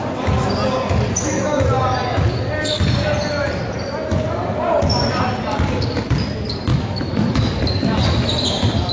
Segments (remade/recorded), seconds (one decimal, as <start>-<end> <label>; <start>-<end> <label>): 0.0-6.7 recorded; 6.7-7.5 remade; 7.5-8.9 recorded